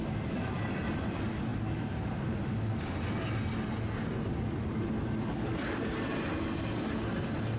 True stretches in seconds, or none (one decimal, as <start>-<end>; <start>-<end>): 0.0-7.6